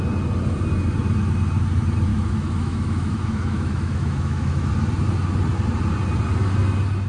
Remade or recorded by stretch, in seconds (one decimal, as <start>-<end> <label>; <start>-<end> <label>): 0.0-2.1 recorded; 2.1-4.7 remade; 4.7-7.1 recorded